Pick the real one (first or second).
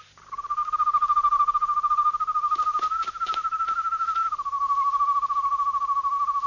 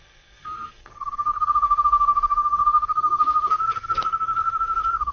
first